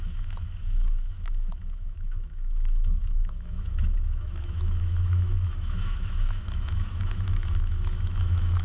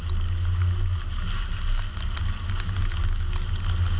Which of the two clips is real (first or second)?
second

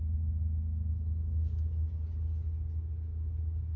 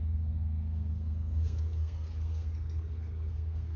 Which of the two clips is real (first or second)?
first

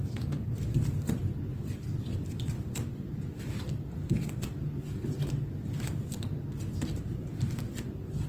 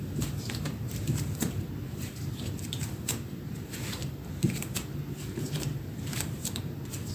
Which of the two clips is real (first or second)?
first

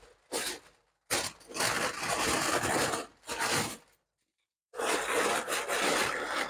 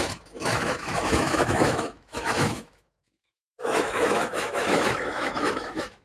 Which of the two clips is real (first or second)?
first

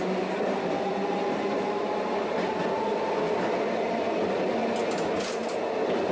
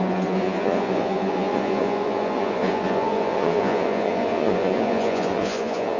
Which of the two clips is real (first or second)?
first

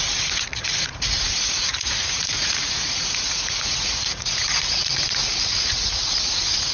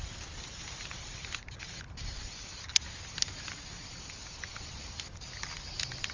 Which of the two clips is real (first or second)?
second